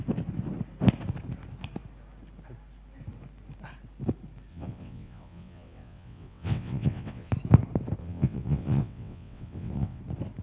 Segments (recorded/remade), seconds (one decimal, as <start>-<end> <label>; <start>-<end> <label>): 0.0-4.5 recorded; 4.5-7.3 remade; 7.3-8.0 recorded; 8.0-10.0 remade; 10.0-10.4 recorded